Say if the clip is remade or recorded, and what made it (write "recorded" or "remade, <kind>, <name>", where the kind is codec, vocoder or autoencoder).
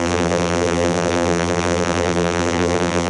remade, vocoder, BigVGAN v2